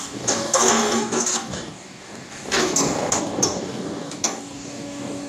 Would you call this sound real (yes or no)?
no